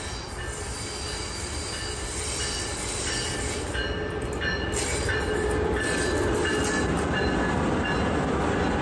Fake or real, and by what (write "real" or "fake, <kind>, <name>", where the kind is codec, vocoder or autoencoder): real